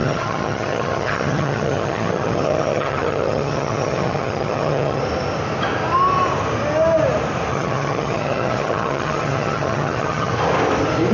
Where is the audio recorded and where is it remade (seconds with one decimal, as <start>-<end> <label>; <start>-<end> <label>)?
0.0-5.0 remade; 5.0-7.5 recorded; 7.5-10.3 remade; 10.3-11.1 recorded